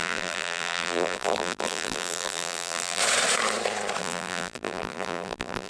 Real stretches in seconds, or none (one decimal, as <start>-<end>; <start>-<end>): 3.0-4.0